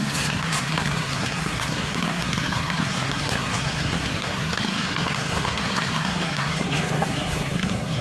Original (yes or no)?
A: no